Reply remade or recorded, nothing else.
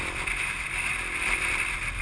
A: remade